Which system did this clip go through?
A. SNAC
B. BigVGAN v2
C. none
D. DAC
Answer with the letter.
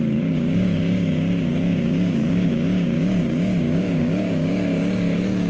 D